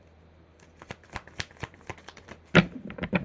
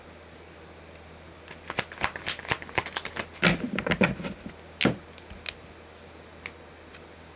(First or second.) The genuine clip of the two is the second